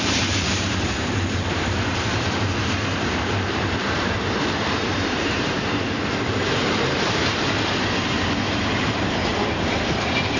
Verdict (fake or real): fake